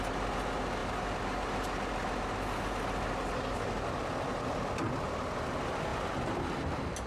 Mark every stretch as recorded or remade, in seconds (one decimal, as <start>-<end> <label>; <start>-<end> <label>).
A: 0.0-7.1 recorded